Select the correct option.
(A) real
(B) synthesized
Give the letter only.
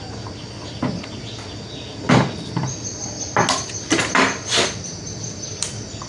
A